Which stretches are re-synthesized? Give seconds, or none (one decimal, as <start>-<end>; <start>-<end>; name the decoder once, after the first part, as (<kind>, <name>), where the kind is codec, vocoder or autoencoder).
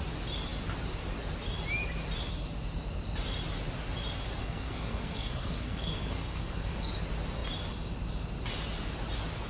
4.4-6.9 (codec, SNAC)